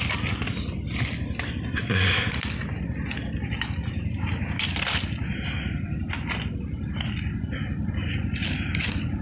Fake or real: real